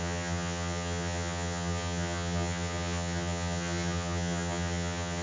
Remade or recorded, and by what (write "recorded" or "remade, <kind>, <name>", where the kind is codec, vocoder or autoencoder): remade, vocoder, HiFi-GAN